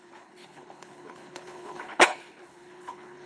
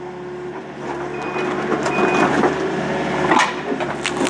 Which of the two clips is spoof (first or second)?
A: first